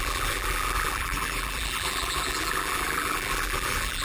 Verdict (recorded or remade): remade